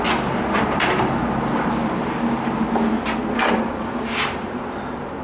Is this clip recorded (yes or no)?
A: yes